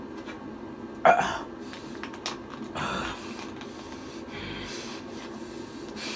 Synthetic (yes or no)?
no